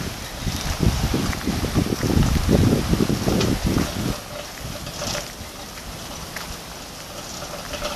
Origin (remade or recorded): recorded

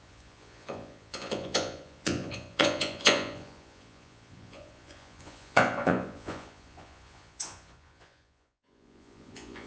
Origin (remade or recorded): remade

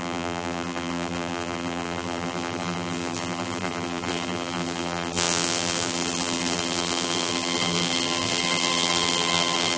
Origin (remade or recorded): remade